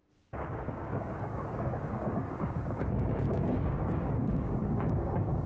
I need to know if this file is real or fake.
fake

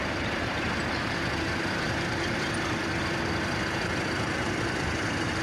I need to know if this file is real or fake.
fake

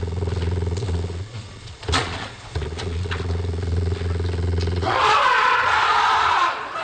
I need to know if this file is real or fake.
fake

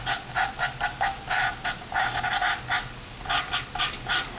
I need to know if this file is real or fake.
real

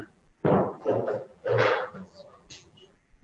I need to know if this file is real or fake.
fake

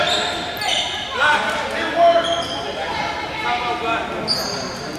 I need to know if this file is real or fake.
real